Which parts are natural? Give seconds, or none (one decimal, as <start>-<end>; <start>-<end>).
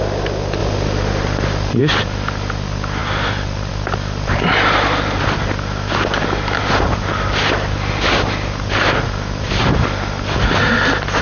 0.0-11.2